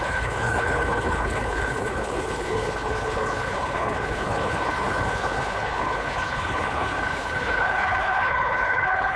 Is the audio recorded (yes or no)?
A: no